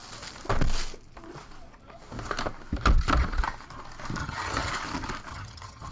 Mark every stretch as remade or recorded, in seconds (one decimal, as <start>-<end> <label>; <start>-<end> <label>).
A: 0.0-4.2 recorded; 4.2-4.7 remade; 4.7-5.3 recorded; 5.3-5.9 remade